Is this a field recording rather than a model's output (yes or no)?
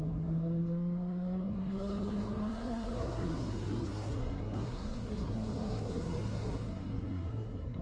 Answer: no